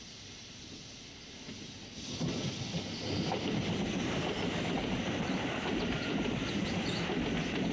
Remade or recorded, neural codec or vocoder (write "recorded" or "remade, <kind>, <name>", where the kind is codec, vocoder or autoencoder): recorded